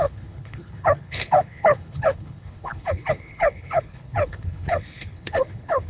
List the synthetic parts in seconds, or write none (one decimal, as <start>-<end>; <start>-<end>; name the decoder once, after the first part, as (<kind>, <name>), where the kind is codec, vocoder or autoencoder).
0.0-5.9 (codec, HILCodec)

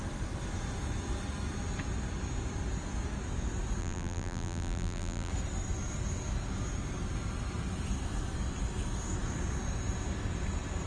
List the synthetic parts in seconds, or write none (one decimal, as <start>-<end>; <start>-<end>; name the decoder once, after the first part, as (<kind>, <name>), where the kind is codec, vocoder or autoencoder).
3.8-5.3 (vocoder, BigVGAN v2)

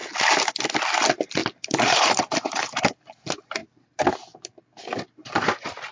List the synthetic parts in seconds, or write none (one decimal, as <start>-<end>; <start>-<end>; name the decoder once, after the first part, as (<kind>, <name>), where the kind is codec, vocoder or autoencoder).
1.4-2.8 (vocoder, BigVGAN v2)

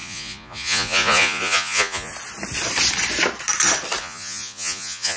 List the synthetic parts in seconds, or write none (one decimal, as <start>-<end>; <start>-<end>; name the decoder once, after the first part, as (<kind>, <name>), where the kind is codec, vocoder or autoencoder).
0.0-2.1 (vocoder, Vocos); 4.0-5.2

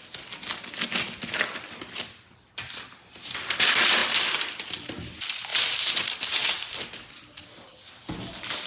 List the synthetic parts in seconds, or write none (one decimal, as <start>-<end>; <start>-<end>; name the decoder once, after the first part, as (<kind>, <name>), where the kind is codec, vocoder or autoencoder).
5.5-6.5 (vocoder, BigVGAN v2)